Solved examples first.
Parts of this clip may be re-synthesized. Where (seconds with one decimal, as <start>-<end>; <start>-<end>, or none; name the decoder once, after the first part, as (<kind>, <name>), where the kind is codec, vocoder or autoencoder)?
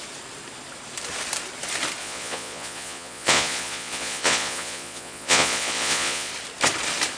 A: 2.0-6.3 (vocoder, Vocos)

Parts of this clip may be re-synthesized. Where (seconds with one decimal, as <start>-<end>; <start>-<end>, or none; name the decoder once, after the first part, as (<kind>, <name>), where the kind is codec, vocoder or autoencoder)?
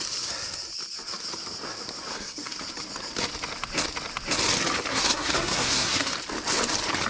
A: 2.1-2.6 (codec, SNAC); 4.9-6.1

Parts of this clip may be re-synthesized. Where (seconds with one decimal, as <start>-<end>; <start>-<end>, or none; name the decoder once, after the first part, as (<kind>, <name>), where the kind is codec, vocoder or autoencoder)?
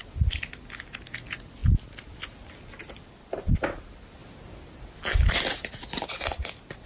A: 0.0-1.6 (vocoder, BigVGAN v2); 2.9-4.2; 5.3-6.9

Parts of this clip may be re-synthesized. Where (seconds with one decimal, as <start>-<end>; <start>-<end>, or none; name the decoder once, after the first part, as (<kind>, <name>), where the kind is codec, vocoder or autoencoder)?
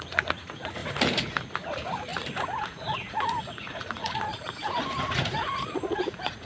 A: 0.0-6.5 (vocoder, Vocos)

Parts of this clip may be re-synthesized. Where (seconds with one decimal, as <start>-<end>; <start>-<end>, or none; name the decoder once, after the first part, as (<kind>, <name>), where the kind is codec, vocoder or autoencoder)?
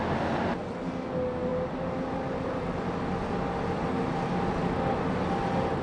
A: none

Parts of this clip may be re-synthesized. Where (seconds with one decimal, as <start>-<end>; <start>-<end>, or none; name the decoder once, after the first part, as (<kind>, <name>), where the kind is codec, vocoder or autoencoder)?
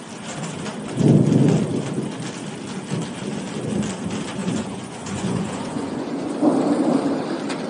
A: 4.4-6.3 (vocoder, Vocos)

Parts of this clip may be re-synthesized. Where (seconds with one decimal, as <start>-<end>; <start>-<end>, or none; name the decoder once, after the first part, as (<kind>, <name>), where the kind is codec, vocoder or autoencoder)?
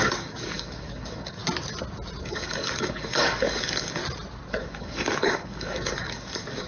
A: 0.0-1.4 (codec, DAC); 2.2-4.0; 4.5-6.7